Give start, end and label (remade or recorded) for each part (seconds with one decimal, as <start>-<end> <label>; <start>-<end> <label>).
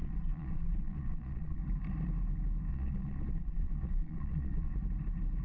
0.0-1.6 remade; 1.6-2.7 recorded; 2.7-4.7 remade; 4.7-5.4 recorded